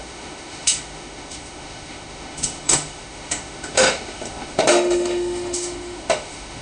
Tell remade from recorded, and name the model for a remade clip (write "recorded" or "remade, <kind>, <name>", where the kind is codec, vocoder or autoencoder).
remade, autoencoder, DAC-VAE